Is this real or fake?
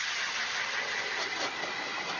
real